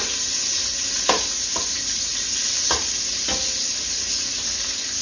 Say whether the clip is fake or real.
real